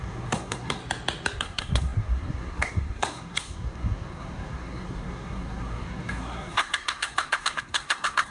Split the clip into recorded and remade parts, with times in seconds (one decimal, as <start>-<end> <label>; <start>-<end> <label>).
0.0-0.8 remade; 0.8-1.4 recorded; 1.4-8.3 remade